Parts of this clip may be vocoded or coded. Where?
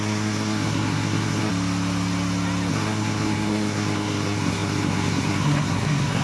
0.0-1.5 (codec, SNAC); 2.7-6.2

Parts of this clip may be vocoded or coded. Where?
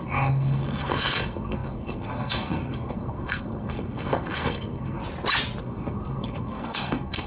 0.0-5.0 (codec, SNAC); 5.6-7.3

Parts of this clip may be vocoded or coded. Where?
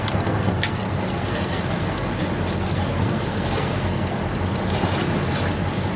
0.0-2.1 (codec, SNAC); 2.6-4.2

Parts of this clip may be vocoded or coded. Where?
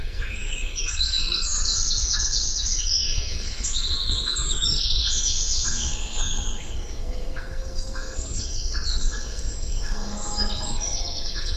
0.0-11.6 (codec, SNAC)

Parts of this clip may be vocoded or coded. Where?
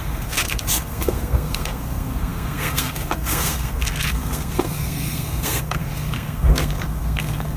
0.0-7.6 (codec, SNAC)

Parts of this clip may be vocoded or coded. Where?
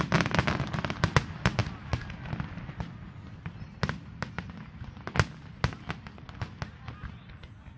none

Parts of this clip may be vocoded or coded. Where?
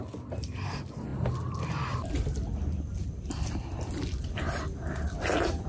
none